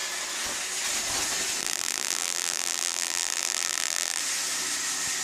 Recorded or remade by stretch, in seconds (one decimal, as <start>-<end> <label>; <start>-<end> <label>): 0.0-1.6 recorded; 1.6-4.2 remade; 4.2-5.2 recorded